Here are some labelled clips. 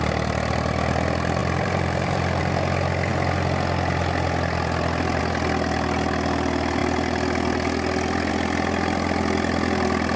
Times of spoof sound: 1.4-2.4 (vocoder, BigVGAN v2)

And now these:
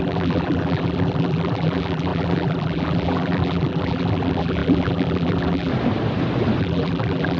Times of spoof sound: 0.0-5.7 (vocoder, BigVGAN v2); 6.6-7.4